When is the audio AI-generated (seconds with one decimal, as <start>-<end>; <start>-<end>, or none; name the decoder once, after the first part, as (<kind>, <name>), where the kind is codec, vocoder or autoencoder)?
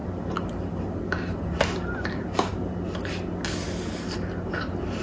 none